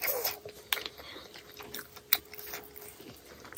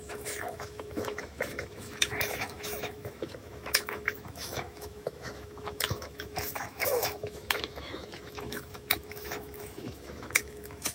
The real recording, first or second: first